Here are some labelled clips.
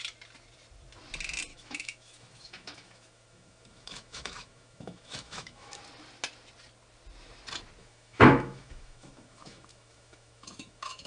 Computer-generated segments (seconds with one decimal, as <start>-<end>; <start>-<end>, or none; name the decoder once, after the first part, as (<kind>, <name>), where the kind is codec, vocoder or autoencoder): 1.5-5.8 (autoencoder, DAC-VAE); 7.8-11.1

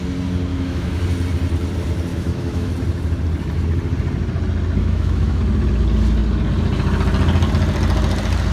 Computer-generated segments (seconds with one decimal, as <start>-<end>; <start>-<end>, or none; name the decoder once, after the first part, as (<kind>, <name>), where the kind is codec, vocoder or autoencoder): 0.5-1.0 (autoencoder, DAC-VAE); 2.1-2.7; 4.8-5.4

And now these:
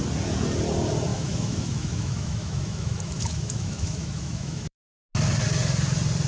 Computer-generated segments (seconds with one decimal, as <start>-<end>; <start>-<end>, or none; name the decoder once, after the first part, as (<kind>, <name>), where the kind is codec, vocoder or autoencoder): 1.1-4.9 (autoencoder, DAC-VAE)